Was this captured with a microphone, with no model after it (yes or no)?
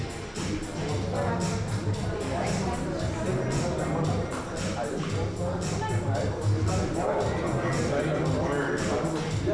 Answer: yes